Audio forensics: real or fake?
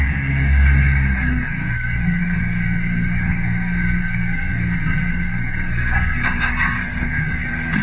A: fake